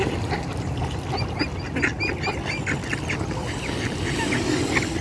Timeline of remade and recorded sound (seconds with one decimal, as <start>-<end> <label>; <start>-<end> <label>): 0.0-5.0 recorded